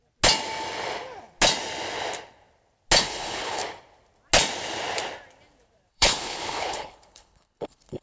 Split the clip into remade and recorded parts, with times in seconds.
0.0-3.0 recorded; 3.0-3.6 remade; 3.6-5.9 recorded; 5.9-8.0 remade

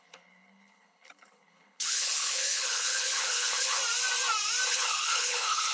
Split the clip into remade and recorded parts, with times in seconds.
0.0-3.8 remade; 3.8-4.7 recorded; 4.7-5.7 remade